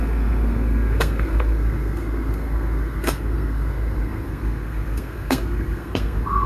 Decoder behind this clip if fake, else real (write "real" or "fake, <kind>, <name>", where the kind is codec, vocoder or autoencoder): fake, codec, SNAC